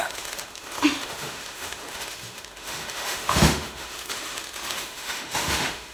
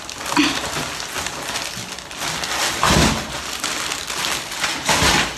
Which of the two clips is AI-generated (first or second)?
first